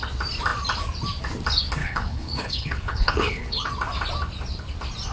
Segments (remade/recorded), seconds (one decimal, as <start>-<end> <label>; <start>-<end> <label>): 0.0-1.8 recorded; 1.8-3.7 remade; 3.7-5.1 recorded